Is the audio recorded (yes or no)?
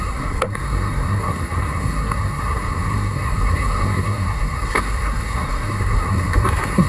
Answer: no